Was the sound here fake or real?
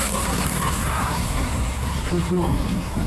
fake